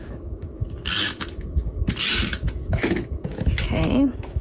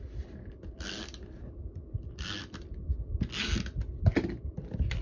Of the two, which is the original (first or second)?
second